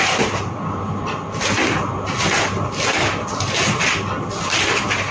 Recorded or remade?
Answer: recorded